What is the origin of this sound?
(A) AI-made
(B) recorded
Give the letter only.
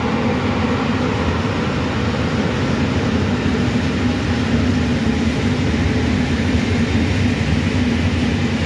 B